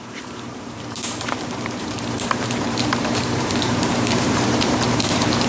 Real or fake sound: fake